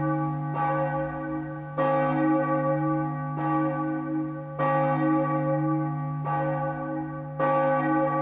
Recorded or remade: recorded